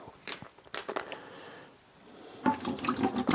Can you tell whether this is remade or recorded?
recorded